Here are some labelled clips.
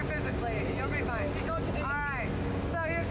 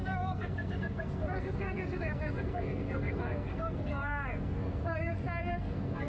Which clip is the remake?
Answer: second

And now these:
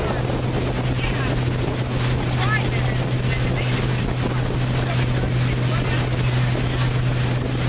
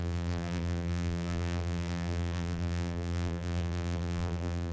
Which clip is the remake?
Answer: second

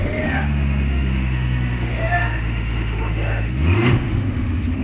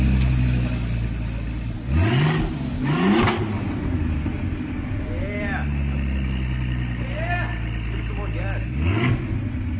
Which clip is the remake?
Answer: first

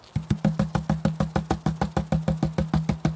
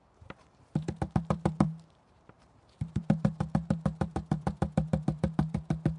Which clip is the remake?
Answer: second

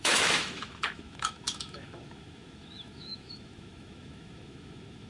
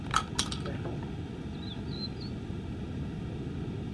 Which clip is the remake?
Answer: first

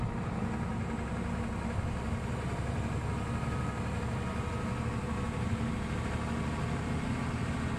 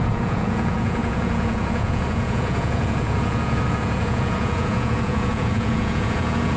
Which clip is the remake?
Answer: second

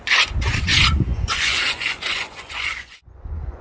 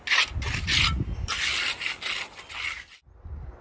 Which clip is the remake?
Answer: first